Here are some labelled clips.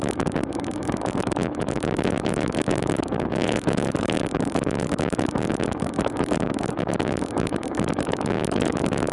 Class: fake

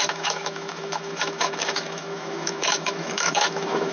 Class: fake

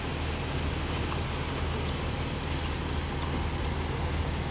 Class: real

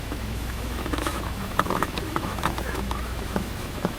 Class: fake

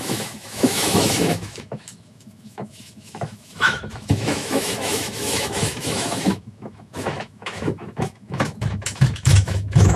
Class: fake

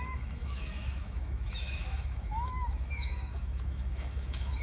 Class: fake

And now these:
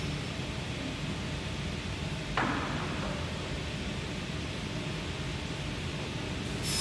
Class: real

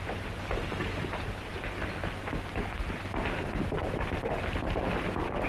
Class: real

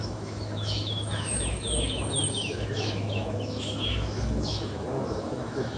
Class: fake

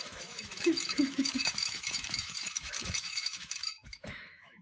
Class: fake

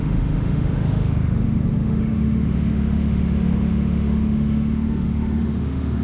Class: fake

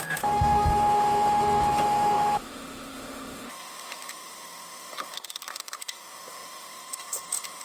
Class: fake